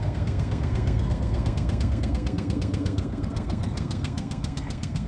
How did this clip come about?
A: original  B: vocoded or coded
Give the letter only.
B